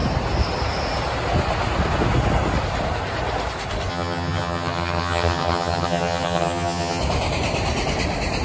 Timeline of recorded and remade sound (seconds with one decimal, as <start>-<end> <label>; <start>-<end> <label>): 0.0-3.9 recorded; 3.9-7.0 remade; 7.0-8.4 recorded